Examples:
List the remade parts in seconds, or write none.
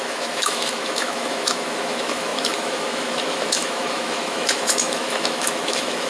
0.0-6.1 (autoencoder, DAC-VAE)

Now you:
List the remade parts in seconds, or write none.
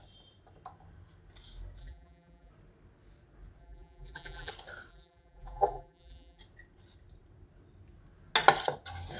1.8-2.5 (vocoder, BigVGAN v2); 3.6-4.5; 4.9-6.4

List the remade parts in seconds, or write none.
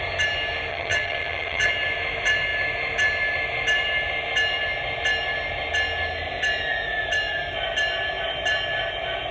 0.7-1.7 (vocoder, HiFi-GAN)